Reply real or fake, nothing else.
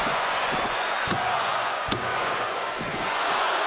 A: fake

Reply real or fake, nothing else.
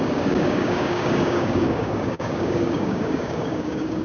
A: fake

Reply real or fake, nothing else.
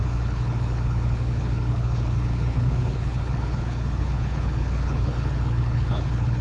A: fake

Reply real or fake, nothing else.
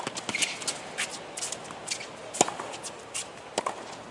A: real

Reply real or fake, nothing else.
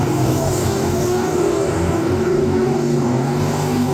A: fake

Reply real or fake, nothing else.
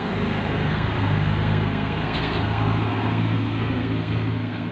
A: fake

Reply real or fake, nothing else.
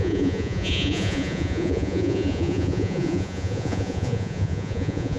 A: fake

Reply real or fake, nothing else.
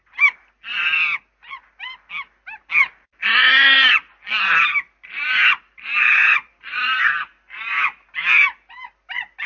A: real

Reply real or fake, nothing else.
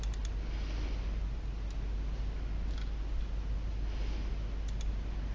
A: real